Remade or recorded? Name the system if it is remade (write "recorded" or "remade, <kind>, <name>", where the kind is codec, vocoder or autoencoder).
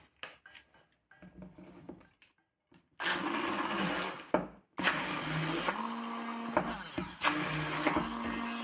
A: recorded